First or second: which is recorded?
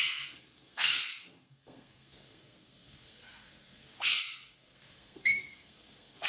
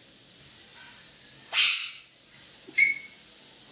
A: second